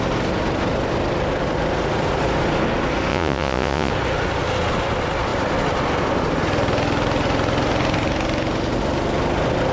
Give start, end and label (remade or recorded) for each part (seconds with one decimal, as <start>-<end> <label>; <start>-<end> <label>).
0.0-3.1 recorded; 3.1-3.9 remade; 3.9-9.7 recorded